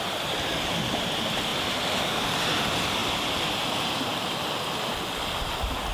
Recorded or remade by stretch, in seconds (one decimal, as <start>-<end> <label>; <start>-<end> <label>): 0.0-1.5 recorded; 1.5-2.0 remade; 2.0-3.0 recorded; 3.0-4.0 remade; 4.0-5.9 recorded